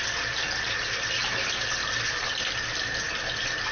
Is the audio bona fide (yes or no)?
yes